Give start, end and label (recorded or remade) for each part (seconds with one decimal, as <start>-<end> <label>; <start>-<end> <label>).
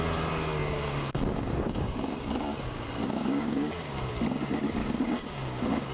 0.0-0.6 recorded; 0.6-4.1 remade; 4.1-4.8 recorded; 4.8-5.9 remade